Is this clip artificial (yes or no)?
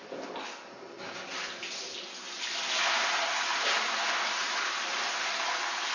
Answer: no